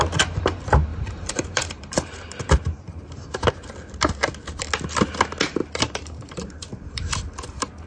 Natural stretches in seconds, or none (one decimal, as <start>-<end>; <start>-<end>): 0.0-0.9; 3.5-5.6; 7.2-7.9